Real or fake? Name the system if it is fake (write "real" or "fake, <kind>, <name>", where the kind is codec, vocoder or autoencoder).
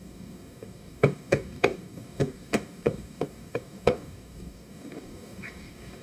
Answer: fake, codec, DAC